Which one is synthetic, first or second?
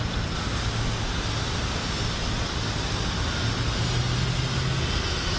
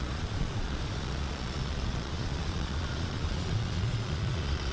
second